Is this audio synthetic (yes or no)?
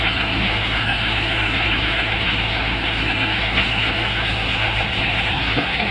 yes